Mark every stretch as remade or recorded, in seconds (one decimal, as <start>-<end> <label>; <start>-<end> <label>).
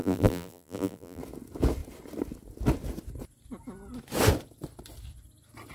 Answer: 0.0-1.2 remade; 1.2-5.7 recorded